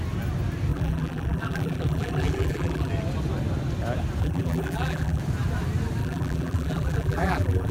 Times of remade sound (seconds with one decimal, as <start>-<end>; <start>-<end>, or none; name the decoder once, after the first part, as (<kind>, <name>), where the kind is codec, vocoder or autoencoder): 0.7-2.9 (vocoder, BigVGAN v2); 4.2-5.2; 6.0-7.7

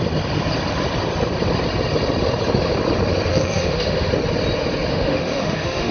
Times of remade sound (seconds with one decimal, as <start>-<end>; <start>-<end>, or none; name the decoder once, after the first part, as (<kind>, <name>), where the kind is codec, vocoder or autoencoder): 3.3-4.1 (autoencoder, DAC-VAE); 4.9-5.9